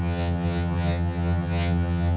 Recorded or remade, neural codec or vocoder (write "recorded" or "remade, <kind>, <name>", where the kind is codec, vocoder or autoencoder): remade, vocoder, HiFi-GAN